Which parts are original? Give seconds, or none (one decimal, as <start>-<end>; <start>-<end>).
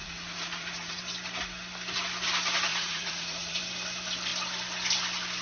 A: 1.0-2.7; 3.6-5.4